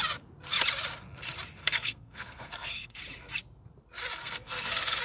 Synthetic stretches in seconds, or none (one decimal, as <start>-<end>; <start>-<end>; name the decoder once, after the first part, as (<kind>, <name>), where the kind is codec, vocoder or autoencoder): 1.6-3.0 (codec, SNAC); 4.2-5.0